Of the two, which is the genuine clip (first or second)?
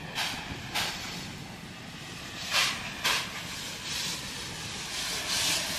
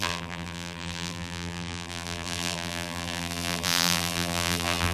first